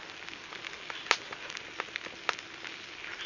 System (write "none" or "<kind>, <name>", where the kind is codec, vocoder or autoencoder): none